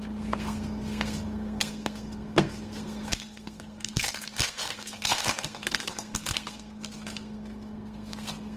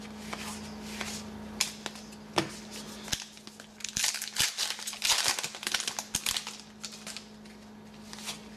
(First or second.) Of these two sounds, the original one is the second